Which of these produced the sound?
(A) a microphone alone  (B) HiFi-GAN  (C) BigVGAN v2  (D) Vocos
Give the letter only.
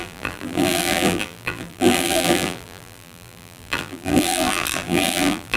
C